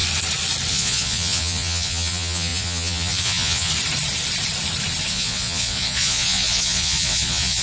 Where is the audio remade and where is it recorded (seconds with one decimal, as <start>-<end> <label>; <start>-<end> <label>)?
0.0-0.7 recorded; 0.7-3.7 remade; 3.7-5.1 recorded; 5.1-7.6 remade